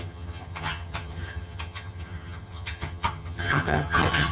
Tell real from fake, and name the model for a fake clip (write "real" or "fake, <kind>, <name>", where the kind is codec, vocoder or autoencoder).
fake, vocoder, HiFi-GAN